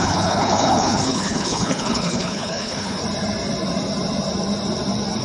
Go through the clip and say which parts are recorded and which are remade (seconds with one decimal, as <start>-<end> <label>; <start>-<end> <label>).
0.0-3.0 remade; 3.0-5.2 recorded